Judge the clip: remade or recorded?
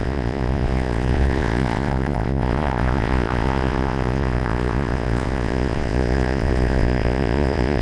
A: remade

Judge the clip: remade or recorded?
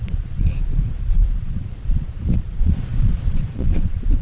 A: remade